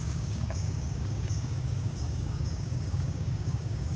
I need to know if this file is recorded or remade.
remade